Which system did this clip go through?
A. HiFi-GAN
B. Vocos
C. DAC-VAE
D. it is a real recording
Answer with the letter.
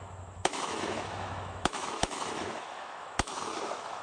C